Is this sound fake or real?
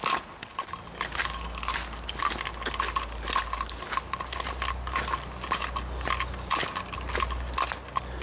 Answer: real